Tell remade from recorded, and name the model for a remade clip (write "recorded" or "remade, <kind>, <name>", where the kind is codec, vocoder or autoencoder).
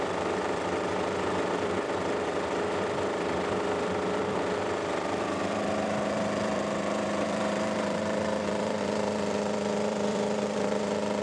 remade, vocoder, BigVGAN v2